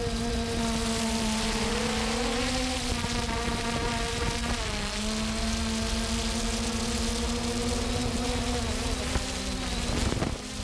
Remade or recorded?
recorded